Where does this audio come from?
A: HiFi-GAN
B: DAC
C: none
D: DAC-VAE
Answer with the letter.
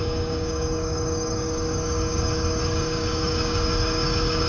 B